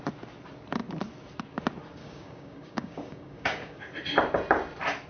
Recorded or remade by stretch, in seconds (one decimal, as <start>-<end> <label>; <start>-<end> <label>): 0.0-2.0 recorded; 2.0-3.8 remade; 3.8-5.1 recorded